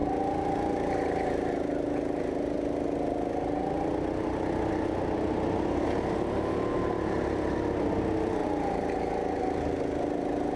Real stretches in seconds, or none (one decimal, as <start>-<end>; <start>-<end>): 0.0-10.6